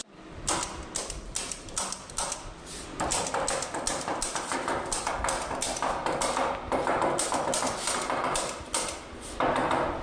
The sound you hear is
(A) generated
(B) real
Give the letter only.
B